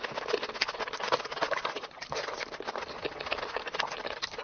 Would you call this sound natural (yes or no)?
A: yes